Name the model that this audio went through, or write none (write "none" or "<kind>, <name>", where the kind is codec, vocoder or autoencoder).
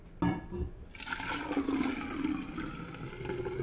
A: none